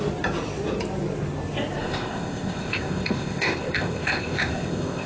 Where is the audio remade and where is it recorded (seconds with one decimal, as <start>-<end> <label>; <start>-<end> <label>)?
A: 0.0-1.8 recorded; 1.8-5.1 remade